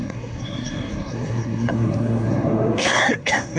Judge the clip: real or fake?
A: fake